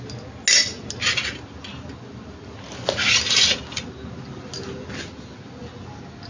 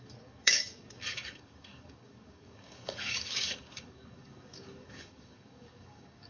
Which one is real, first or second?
first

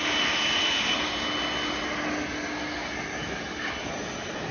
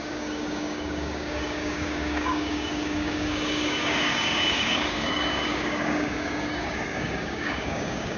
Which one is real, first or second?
first